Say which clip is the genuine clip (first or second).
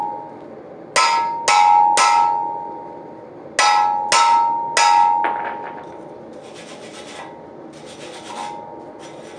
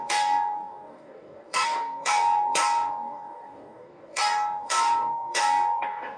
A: first